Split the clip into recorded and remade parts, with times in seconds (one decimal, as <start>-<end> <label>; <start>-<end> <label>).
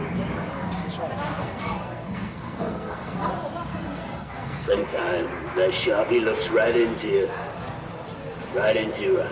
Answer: 0.0-1.4 recorded; 1.4-3.3 remade; 3.3-3.7 recorded; 3.7-5.0 remade; 5.0-9.3 recorded